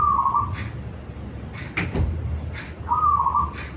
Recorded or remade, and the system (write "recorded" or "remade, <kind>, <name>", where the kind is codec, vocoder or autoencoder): remade, vocoder, BigVGAN v2